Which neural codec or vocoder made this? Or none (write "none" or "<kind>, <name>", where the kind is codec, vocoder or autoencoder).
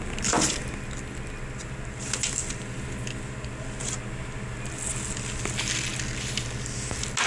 none